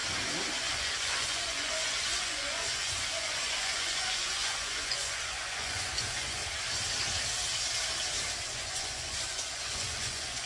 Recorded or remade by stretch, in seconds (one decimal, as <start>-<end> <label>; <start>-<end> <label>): 0.0-0.5 recorded; 0.5-6.4 remade; 6.4-8.5 recorded; 8.5-10.5 remade